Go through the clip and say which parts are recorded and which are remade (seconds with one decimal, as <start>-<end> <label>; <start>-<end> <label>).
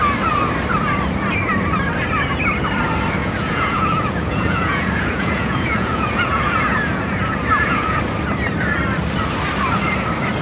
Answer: 0.0-3.2 recorded; 3.2-8.0 remade; 8.0-10.4 recorded